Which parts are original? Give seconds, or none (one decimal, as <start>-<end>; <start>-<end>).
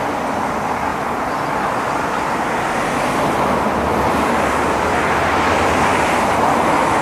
0.0-7.0